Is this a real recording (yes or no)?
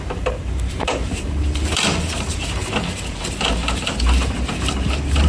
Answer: no